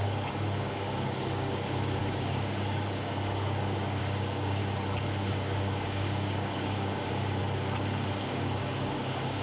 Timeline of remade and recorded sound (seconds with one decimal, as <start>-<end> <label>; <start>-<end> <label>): 0.0-4.6 remade; 4.6-5.3 recorded; 5.3-7.4 remade; 7.4-8.2 recorded; 8.2-9.4 remade

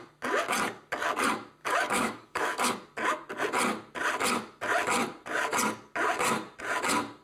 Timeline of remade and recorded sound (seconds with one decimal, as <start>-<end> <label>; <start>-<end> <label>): 0.0-1.6 recorded; 1.6-2.7 remade; 2.7-7.2 recorded

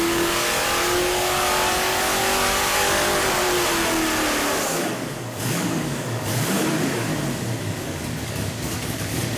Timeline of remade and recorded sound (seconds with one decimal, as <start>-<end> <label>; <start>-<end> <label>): 0.0-3.4 remade; 3.4-4.6 recorded; 4.6-7.1 remade; 7.1-7.6 recorded; 7.6-9.4 remade

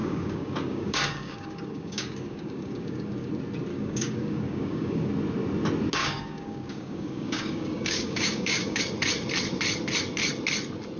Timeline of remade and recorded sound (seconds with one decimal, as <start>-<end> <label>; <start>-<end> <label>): 0.0-3.3 remade; 3.3-3.7 recorded; 3.7-5.1 remade; 5.1-6.0 recorded; 6.0-8.8 remade; 8.8-11.0 recorded

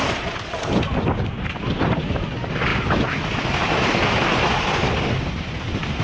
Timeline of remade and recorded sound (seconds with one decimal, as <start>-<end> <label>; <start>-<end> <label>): 0.0-6.0 recorded

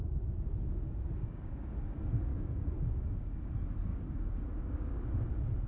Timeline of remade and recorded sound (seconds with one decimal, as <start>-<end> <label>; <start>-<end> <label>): 0.0-1.2 recorded; 1.2-1.9 remade; 1.9-2.3 recorded; 2.3-3.4 remade; 3.4-3.9 recorded; 3.9-5.1 remade; 5.1-5.7 recorded